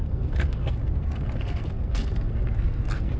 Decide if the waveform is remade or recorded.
remade